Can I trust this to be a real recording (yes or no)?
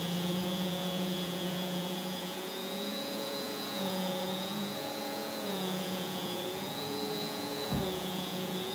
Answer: no